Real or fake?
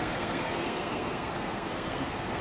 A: fake